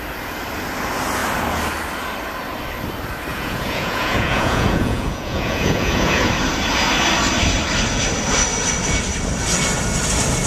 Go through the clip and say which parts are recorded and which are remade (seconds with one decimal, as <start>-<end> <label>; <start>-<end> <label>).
0.0-3.3 recorded; 3.3-6.3 remade; 6.3-10.5 recorded